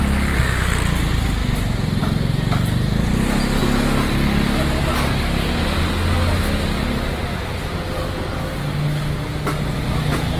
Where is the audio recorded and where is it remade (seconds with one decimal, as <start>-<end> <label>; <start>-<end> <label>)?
0.0-10.4 recorded